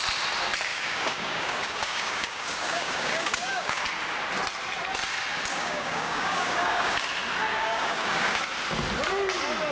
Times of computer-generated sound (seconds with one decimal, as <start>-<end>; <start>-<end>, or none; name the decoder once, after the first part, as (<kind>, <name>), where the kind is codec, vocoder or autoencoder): 0.7-3.8 (codec, DAC); 5.5-7.0; 7.5-8.4

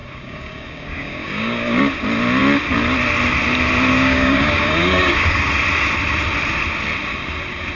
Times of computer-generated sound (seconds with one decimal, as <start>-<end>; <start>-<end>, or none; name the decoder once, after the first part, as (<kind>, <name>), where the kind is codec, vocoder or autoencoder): 0.0-1.8 (codec, DAC); 3.9-5.5